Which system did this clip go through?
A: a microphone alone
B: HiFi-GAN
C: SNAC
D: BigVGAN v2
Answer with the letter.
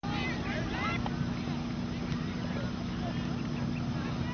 A